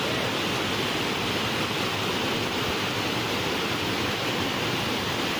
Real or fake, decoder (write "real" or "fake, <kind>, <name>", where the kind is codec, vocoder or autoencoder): real